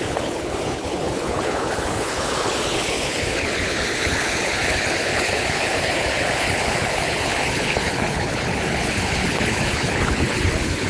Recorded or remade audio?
remade